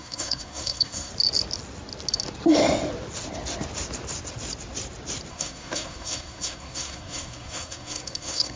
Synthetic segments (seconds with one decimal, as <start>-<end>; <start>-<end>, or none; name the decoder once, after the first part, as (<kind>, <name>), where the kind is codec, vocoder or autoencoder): 0.0-1.1 (codec, SNAC); 5.3-8.6